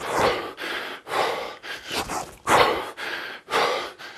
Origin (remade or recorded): recorded